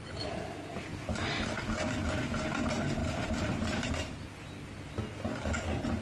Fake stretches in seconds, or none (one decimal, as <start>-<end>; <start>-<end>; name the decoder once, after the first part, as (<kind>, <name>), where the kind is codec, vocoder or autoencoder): 0.9-1.5 (vocoder, BigVGAN v2); 3.0-3.9